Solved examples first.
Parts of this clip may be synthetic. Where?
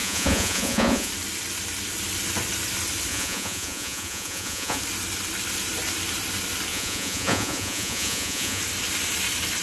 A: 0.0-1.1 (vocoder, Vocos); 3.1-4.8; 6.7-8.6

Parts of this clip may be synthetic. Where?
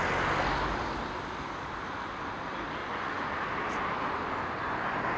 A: 2.8-3.3 (vocoder, Vocos)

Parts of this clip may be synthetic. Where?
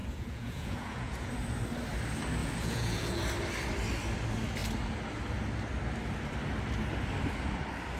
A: 0.0-1.3 (vocoder, Vocos); 2.4-3.2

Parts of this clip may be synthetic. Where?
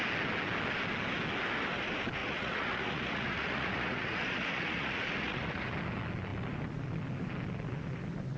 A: 2.2-5.7 (vocoder, Vocos)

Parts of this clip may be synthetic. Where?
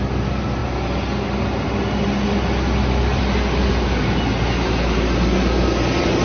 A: none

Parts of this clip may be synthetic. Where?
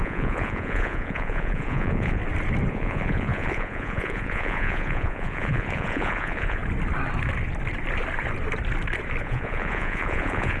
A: 0.0-2.2 (vocoder, Vocos); 2.7-6.6; 9.2-10.6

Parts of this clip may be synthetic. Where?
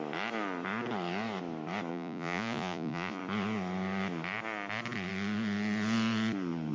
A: 1.9-3.2 (vocoder, Vocos)